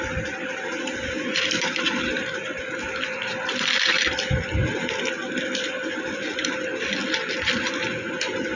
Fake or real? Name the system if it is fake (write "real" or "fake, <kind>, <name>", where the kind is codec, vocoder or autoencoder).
real